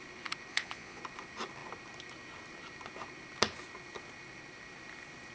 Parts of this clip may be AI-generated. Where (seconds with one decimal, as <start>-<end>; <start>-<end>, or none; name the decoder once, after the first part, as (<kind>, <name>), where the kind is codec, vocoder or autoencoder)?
0.5-1.0 (vocoder, Vocos)